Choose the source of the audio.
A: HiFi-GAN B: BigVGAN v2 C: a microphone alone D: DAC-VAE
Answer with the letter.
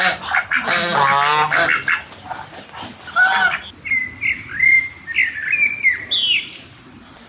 C